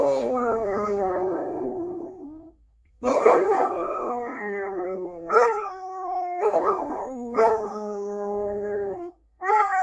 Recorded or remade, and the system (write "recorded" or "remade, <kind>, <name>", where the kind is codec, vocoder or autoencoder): remade, codec, SNAC